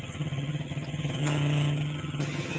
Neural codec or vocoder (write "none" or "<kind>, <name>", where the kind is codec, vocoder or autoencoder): vocoder, HiFi-GAN